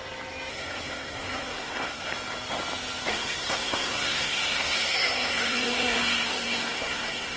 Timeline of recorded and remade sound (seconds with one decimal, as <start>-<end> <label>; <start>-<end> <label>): 0.0-0.5 recorded; 0.5-2.1 remade; 2.1-3.1 recorded; 3.1-7.4 remade